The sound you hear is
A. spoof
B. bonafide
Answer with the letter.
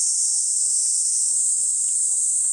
B